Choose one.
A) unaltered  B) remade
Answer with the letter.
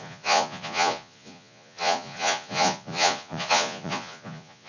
B